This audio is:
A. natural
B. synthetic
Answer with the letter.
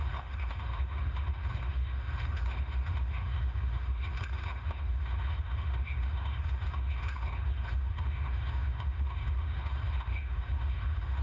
B